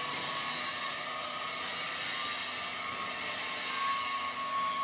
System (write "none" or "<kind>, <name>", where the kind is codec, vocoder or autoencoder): none